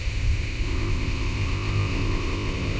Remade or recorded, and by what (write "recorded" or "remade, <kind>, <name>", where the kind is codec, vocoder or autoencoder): remade, codec, ZipCodec